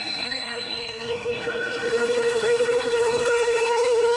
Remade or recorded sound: remade